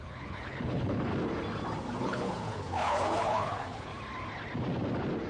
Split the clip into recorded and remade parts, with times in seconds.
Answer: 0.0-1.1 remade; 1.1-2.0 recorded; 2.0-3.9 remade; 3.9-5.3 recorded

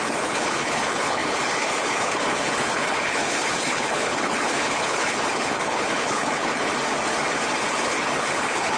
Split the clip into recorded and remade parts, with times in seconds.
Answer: 0.0-6.7 remade; 6.7-7.7 recorded; 7.7-8.8 remade

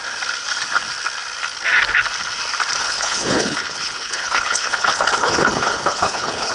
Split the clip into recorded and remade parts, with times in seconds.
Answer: 0.0-2.8 recorded; 2.8-6.5 remade

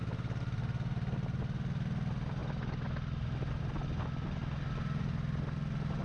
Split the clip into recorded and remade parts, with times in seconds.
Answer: 0.0-6.0 recorded

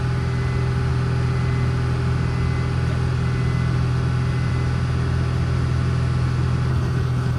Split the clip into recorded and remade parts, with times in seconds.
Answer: 0.0-6.7 recorded; 6.7-7.4 remade

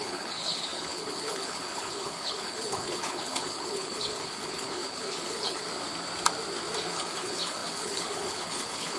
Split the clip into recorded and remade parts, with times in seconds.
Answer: 0.0-5.6 remade; 5.6-6.9 recorded; 6.9-9.0 remade

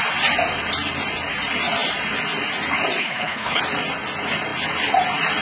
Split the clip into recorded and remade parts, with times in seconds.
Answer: 0.0-3.0 recorded; 3.0-3.6 remade; 3.6-5.4 recorded